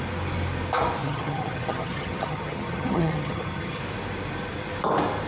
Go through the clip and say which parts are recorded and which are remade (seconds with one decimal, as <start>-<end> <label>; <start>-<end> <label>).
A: 0.0-1.0 recorded; 1.0-3.8 remade; 3.8-5.3 recorded